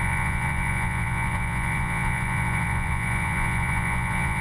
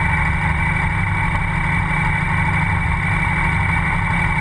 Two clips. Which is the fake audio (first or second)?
first